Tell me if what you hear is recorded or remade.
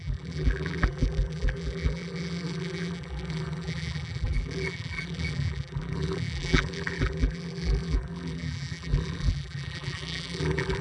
remade